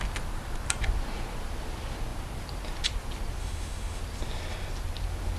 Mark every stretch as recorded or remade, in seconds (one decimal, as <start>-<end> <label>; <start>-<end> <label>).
0.0-3.4 recorded; 3.4-4.0 remade; 4.0-5.4 recorded